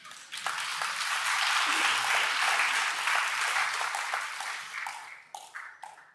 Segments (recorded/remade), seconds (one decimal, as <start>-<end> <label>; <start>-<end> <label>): 0.0-0.7 recorded; 0.7-1.7 remade; 1.7-6.1 recorded